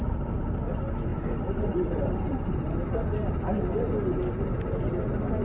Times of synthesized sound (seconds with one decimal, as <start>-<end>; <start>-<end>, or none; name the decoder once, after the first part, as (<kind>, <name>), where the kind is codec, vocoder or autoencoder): 1.1-3.6 (vocoder, BigVGAN v2)